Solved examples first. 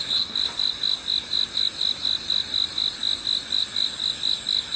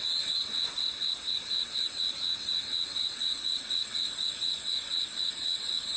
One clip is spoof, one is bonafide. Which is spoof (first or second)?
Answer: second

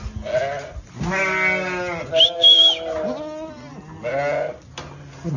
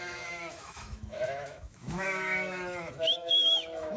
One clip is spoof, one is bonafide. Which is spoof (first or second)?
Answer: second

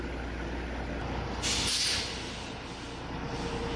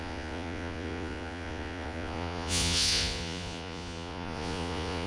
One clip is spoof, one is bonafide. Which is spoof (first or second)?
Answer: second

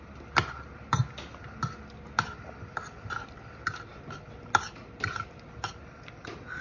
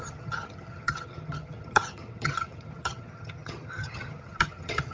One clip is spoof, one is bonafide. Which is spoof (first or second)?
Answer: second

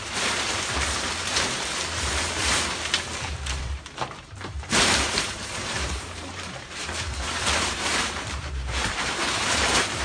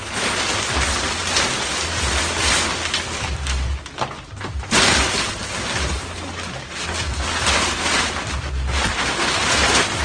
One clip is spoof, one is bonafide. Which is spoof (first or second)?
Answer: first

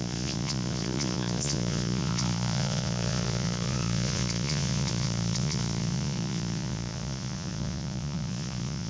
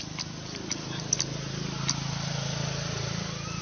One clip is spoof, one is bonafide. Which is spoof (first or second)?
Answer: first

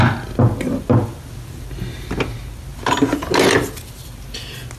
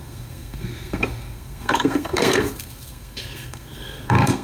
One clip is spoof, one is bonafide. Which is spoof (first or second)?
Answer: second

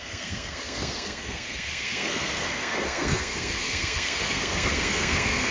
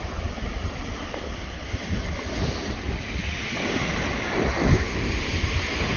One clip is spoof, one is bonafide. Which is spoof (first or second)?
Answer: first